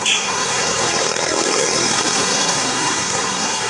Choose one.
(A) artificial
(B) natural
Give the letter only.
A